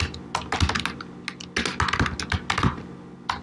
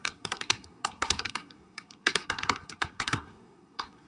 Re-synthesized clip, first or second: second